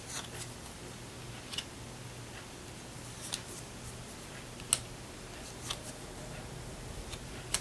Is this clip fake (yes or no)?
no